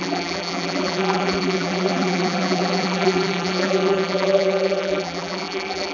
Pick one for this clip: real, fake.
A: fake